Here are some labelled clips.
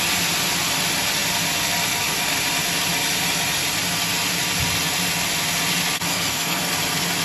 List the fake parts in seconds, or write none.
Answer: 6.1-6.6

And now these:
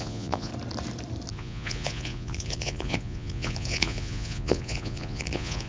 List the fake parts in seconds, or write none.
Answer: 0.0-0.5; 1.3-5.7

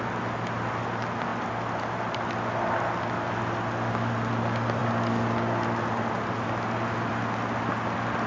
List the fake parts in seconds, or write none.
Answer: none

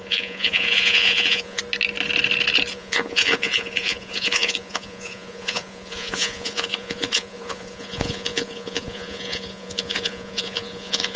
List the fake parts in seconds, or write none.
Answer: 0.0-1.6; 2.7-11.2

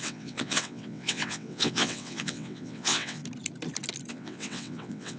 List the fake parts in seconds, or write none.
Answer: 0.0-3.2; 4.1-5.2

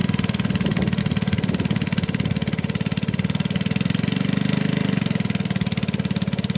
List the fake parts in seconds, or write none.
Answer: none

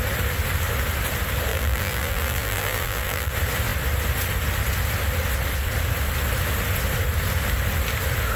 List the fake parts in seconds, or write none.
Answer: 1.5-3.3

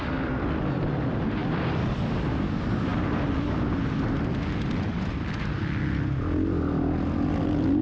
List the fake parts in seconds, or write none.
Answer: 1.4-1.9